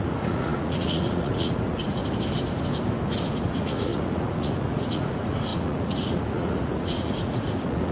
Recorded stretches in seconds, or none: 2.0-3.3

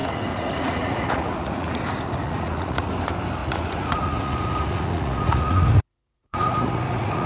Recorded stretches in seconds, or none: 2.9-3.4